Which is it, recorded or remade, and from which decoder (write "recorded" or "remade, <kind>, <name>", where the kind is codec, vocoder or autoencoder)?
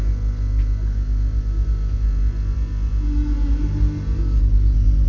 recorded